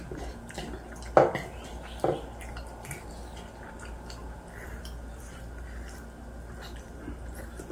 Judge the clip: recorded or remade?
recorded